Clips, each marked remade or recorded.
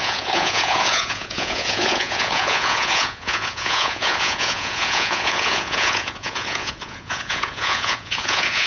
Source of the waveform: remade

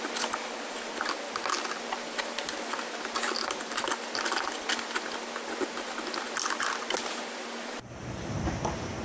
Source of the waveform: recorded